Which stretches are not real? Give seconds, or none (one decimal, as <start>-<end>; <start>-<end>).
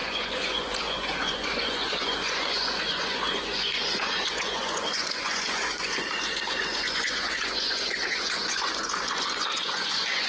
0.0-10.3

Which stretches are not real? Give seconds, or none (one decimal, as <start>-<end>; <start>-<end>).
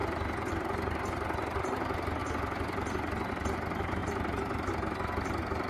0.5-2.2; 3.3-5.7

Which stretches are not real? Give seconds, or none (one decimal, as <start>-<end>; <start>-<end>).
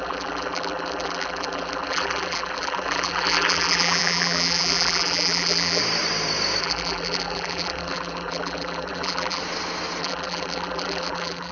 0.0-5.8; 6.6-9.4; 10.0-11.5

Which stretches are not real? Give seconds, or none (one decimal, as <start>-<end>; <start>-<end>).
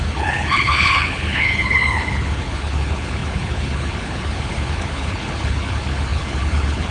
0.0-6.9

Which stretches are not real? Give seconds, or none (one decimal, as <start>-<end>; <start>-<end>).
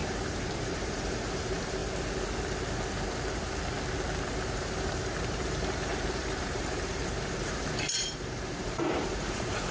0.0-1.8; 4.2-9.7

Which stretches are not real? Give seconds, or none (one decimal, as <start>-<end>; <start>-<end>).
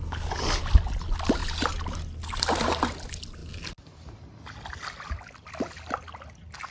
none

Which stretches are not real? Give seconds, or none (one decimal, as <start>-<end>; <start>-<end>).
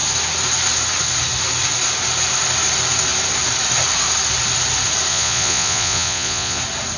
5.1-6.6